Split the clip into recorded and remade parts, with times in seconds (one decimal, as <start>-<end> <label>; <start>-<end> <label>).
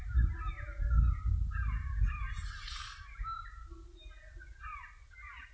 0.0-5.5 recorded